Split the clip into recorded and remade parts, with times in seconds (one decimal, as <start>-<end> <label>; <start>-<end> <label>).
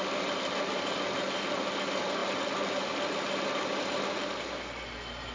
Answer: 0.0-5.3 recorded